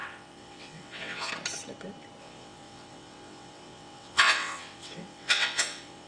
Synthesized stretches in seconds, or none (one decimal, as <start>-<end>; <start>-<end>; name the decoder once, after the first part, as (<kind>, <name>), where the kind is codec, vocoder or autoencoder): 0.0-1.3 (vocoder, WaveNeXt); 2.2-6.1

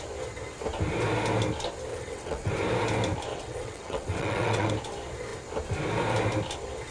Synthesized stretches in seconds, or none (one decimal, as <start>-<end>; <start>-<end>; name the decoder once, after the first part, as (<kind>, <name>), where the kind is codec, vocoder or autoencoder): 1.9-2.5 (vocoder, WaveNeXt); 3.3-4.7

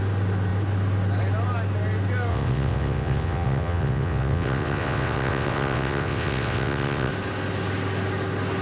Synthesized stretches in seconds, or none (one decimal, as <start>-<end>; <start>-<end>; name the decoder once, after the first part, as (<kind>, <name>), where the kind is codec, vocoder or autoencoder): 2.3-7.1 (vocoder, WaveNeXt)

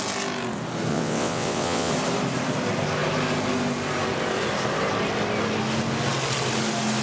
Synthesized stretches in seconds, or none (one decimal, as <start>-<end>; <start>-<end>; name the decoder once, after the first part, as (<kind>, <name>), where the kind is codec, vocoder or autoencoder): 0.9-1.9 (vocoder, WaveNeXt)

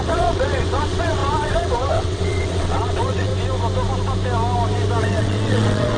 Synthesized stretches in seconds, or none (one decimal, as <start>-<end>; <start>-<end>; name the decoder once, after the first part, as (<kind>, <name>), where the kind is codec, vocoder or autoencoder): 0.0-3.3 (vocoder, WaveNeXt); 5.0-6.0

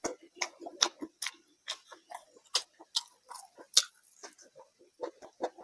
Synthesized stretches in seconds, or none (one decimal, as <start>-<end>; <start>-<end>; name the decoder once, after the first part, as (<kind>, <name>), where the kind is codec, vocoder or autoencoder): none

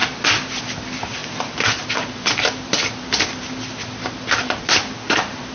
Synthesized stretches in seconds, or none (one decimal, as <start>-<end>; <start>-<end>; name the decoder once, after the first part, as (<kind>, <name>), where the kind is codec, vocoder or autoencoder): none

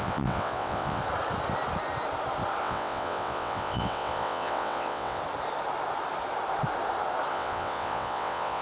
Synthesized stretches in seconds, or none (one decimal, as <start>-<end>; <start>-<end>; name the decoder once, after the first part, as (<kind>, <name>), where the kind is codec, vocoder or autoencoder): 0.0-1.0 (vocoder, WaveNeXt); 2.6-5.2; 7.3-8.6